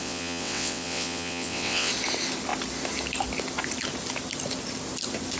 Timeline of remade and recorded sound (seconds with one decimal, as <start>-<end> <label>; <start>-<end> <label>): 0.0-1.9 remade; 1.9-5.4 recorded